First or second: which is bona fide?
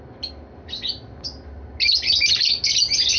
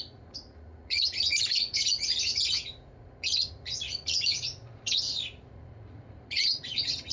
first